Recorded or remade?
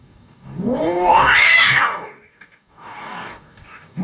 remade